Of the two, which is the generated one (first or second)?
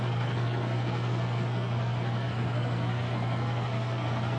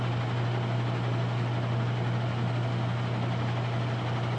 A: first